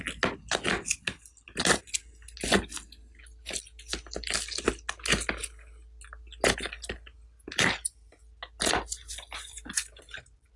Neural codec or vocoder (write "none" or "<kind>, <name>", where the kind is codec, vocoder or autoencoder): none